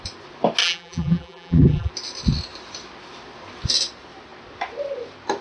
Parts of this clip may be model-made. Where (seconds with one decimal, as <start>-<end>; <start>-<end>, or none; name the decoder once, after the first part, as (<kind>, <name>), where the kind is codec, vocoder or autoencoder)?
0.6-1.9 (vocoder, BigVGAN v2)